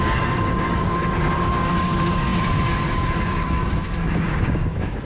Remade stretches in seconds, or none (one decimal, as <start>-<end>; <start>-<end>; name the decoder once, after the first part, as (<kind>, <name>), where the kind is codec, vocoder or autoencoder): 0.0-5.0 (codec, DAC)